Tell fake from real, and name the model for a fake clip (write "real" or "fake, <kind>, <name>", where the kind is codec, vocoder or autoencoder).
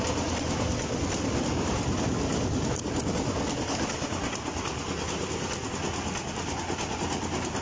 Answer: real